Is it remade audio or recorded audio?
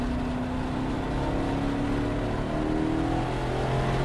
recorded